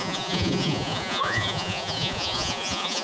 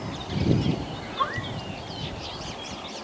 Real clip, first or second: second